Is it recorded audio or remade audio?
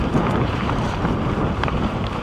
remade